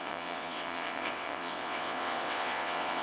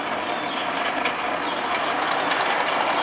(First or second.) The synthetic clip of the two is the first